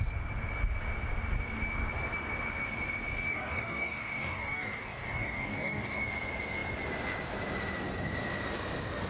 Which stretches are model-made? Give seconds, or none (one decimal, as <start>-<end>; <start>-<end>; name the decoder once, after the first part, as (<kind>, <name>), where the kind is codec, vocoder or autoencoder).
3.3-6.0 (codec, DAC)